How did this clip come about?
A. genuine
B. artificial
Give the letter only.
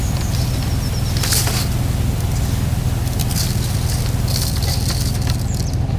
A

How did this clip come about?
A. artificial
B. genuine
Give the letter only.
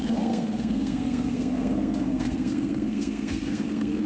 A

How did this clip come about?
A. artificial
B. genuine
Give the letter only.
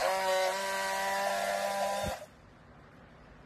B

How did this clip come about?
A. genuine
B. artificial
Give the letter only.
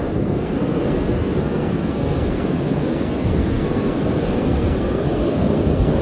B